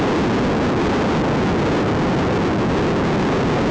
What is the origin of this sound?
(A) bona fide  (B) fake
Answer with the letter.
A